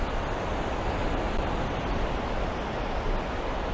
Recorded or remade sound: recorded